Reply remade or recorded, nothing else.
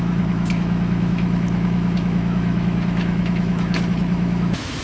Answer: remade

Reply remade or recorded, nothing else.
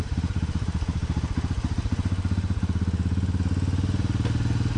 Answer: recorded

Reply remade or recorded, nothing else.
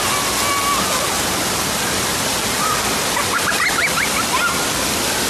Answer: recorded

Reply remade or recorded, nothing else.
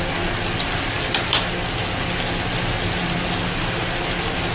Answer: recorded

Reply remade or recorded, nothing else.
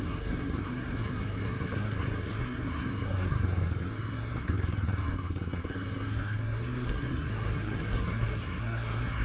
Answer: remade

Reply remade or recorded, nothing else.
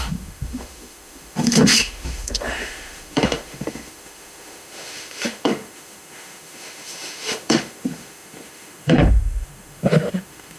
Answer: remade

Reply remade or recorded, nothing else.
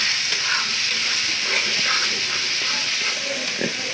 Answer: recorded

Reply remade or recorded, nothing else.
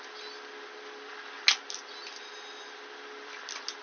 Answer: recorded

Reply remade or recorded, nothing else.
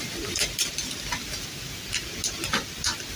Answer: recorded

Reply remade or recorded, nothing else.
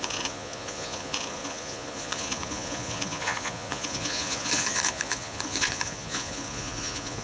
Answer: remade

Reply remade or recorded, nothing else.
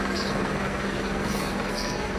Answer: remade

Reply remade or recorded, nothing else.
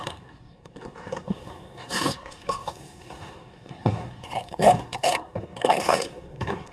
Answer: remade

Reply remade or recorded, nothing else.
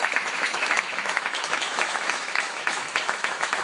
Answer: remade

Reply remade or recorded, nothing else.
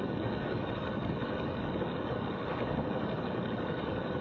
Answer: remade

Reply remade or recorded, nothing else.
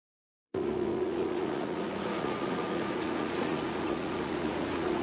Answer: remade